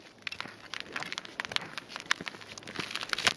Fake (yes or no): no